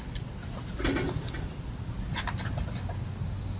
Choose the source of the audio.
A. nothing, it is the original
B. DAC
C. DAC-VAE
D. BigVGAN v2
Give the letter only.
A